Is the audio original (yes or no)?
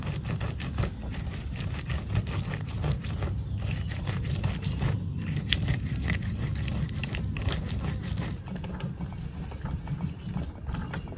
yes